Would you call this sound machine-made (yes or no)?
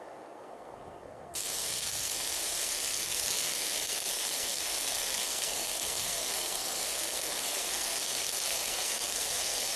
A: yes